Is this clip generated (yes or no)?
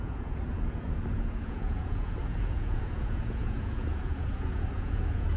yes